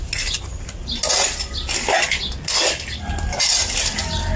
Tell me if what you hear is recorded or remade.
recorded